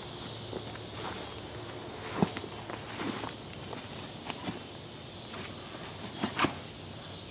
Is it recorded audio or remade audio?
recorded